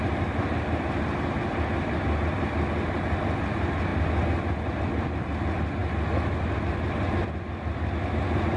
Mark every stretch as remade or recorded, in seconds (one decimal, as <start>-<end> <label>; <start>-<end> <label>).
0.0-8.6 recorded